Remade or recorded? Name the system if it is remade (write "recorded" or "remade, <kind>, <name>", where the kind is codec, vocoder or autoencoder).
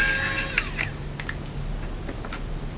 recorded